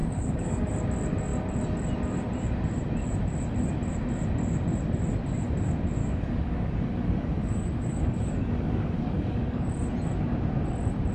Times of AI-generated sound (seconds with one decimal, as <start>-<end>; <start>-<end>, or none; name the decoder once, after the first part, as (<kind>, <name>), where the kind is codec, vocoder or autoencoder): 0.0-0.7 (codec, DAC); 6.0-9.7